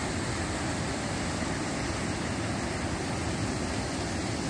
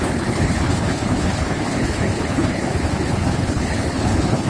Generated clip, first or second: second